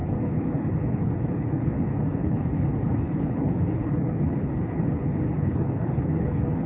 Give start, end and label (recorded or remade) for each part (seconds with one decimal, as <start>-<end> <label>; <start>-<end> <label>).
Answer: 0.0-6.7 remade